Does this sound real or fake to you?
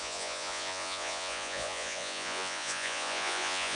fake